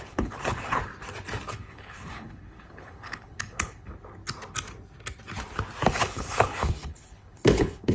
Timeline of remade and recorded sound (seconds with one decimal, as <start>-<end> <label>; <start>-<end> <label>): 0.0-0.9 remade; 0.9-1.5 recorded; 1.5-3.9 remade; 3.9-5.9 recorded; 5.9-7.9 remade